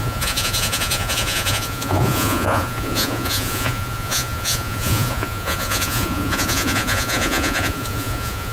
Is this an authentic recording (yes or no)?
no